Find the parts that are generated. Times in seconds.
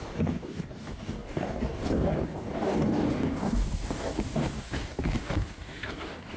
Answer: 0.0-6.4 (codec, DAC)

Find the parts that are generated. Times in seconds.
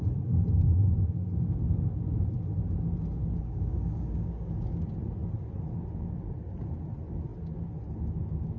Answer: 3.2-4.8 (codec, DAC)